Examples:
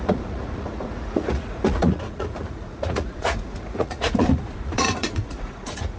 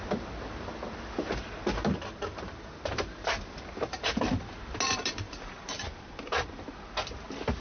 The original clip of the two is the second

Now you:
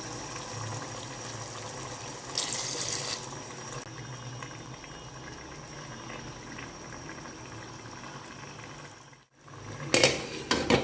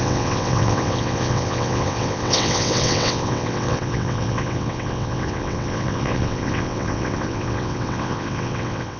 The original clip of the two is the first